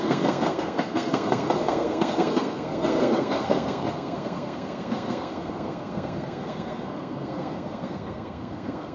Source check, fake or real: fake